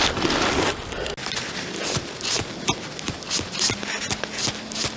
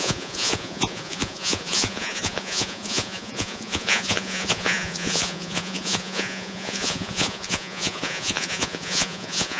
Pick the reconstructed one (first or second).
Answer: second